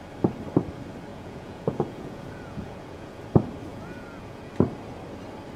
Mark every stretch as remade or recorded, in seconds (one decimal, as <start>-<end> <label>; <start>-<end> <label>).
0.0-1.1 recorded; 1.1-3.2 remade; 3.2-3.7 recorded; 3.7-4.5 remade; 4.5-5.6 recorded